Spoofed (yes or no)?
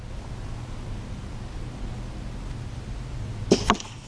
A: no